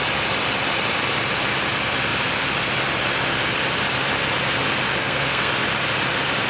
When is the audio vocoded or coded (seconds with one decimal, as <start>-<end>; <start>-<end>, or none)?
5.0-5.5